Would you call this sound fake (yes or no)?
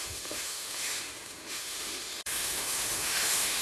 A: yes